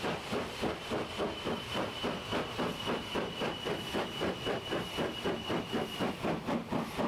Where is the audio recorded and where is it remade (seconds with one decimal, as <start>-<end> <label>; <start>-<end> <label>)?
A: 0.0-7.1 remade